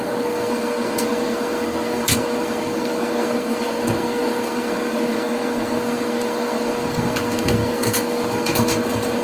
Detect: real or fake fake